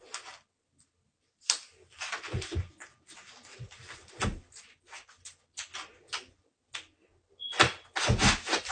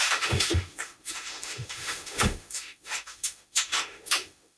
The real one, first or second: first